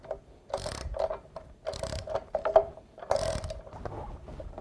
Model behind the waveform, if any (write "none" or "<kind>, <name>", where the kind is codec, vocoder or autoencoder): none